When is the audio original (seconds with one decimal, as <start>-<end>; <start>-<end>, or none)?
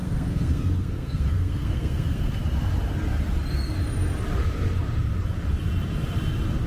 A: 2.3-6.7